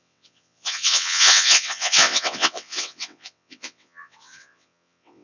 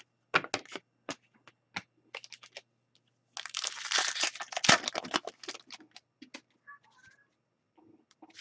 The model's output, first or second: first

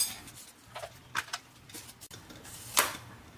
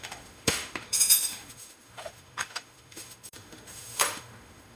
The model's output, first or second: second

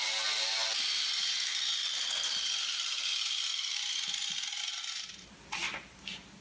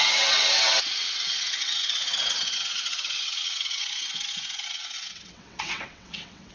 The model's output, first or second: second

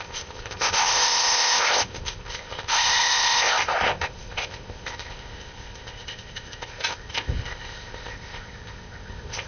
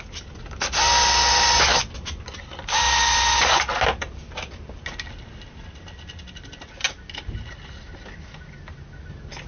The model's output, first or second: first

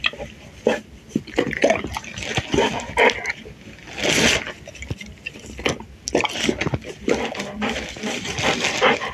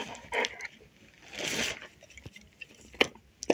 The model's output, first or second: second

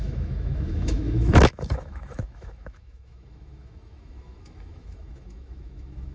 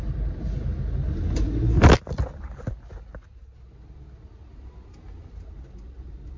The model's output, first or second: first